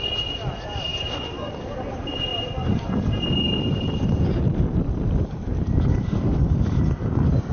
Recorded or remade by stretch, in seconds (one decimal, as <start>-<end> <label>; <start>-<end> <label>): 0.0-7.5 recorded